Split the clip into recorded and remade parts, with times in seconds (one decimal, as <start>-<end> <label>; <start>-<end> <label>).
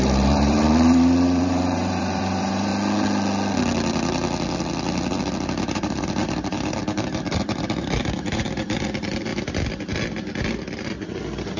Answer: 0.0-2.7 remade; 2.7-5.6 recorded; 5.6-9.3 remade; 9.3-10.8 recorded; 10.8-11.6 remade